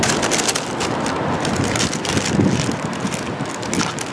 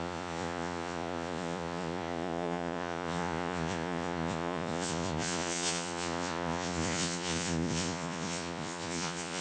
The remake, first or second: second